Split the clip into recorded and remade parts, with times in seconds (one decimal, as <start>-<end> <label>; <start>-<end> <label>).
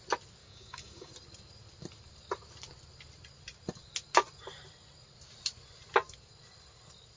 0.0-0.4 recorded; 0.4-1.1 remade; 1.1-7.2 recorded